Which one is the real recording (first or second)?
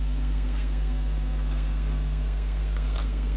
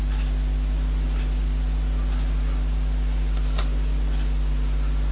second